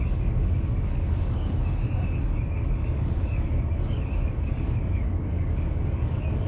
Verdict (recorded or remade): remade